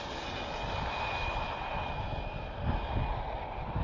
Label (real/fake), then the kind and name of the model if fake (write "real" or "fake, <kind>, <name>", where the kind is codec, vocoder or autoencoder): real